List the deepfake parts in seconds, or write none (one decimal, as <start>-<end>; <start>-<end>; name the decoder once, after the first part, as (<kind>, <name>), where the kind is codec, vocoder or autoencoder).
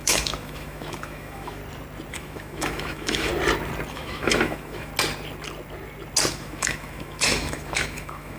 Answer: 0.0-1.6 (autoencoder, DAC-VAE); 2.1-3.3; 3.9-4.9; 6.3-8.4